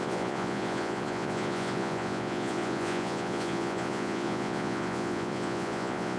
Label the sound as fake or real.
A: fake